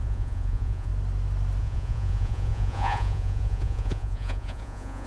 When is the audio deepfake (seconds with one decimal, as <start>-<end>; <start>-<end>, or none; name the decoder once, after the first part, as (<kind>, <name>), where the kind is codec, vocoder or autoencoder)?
0.0-0.9 (vocoder, Vocos); 1.6-5.1